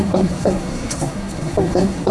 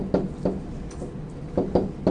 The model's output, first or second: first